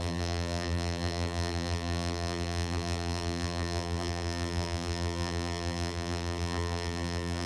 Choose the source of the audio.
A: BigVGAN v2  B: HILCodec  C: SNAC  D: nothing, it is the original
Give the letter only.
A